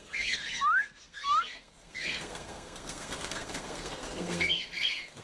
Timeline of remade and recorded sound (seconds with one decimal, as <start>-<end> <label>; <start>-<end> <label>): 0.0-5.2 remade